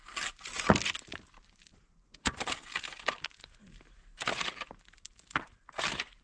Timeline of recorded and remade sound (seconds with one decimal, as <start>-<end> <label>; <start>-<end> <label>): 0.0-6.2 recorded